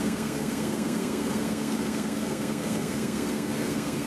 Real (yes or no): no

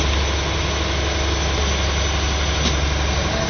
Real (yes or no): yes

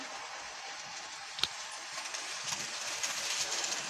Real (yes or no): yes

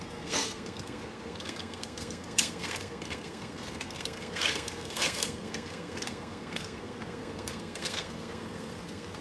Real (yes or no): no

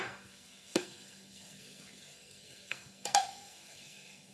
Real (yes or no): no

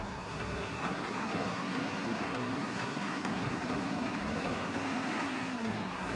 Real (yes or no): no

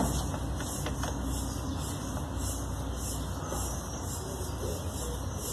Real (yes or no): yes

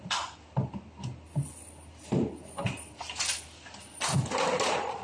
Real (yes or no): yes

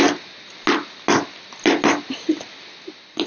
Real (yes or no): yes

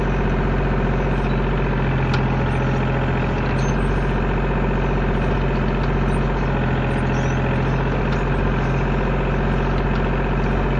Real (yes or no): yes